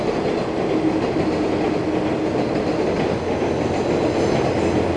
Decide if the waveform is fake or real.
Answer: real